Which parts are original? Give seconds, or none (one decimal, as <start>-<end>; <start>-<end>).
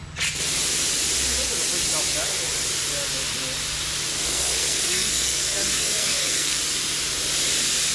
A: 0.0-4.1; 6.6-7.9